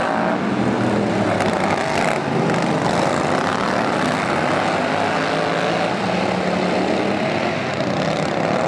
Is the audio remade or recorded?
recorded